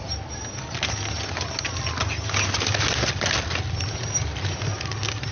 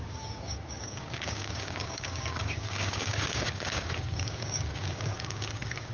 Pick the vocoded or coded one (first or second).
second